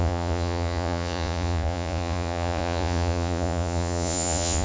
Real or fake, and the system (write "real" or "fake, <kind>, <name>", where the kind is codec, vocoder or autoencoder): fake, vocoder, Vocos